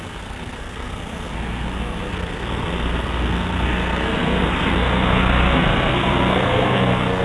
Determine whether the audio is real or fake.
fake